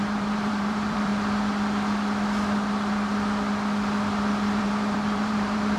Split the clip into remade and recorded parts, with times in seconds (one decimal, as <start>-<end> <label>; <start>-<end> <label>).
0.0-1.1 remade; 1.1-4.6 recorded; 4.6-5.8 remade